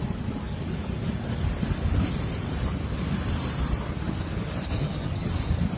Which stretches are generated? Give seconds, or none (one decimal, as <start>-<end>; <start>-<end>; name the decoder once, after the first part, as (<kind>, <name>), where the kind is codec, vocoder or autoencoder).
4.8-5.3 (vocoder, HiFi-GAN)